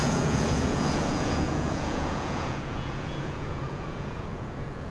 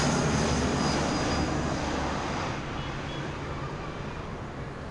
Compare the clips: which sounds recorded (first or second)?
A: second